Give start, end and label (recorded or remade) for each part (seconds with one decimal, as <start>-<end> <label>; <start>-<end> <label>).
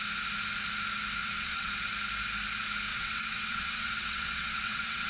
0.0-1.2 recorded; 1.2-1.7 remade; 1.7-2.9 recorded; 2.9-5.1 remade